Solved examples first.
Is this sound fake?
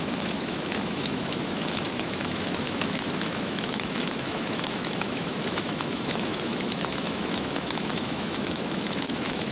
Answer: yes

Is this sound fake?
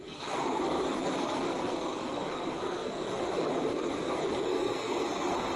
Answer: yes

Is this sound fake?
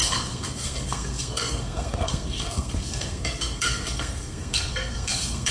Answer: yes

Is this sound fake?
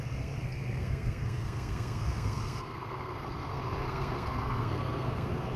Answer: yes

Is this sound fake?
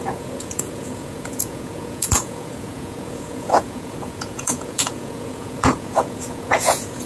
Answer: yes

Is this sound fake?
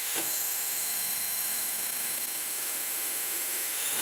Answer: yes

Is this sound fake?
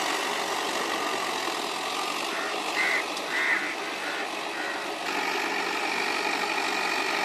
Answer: no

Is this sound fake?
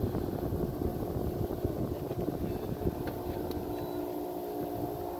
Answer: no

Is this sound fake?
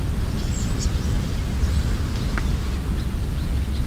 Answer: no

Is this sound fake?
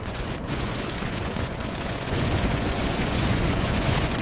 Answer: yes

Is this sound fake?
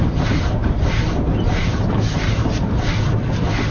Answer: no